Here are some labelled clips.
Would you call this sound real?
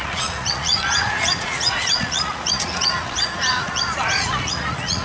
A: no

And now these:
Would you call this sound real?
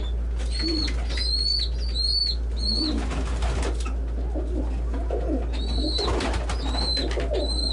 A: yes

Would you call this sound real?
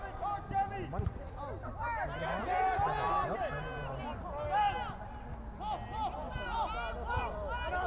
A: yes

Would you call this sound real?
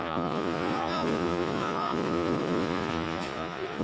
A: no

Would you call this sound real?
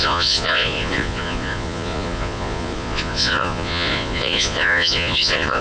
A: no